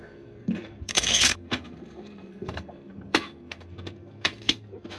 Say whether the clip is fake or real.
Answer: fake